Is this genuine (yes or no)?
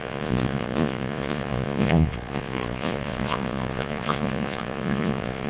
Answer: no